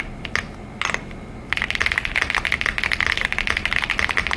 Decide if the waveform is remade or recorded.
recorded